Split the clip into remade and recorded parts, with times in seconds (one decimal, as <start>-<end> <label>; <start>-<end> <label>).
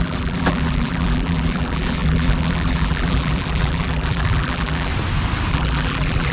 0.0-4.9 remade; 4.9-5.5 recorded; 5.5-6.3 remade